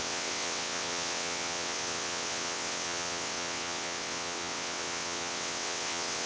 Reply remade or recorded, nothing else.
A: remade